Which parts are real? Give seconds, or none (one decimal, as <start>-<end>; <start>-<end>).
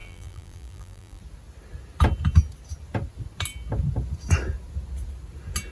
1.2-5.7